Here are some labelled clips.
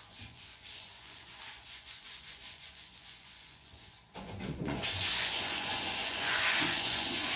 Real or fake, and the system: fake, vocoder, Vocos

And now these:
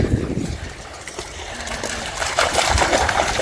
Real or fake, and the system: real